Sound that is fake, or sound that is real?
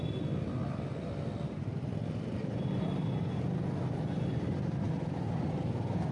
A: real